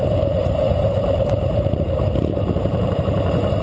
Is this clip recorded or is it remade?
remade